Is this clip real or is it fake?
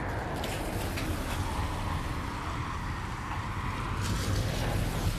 real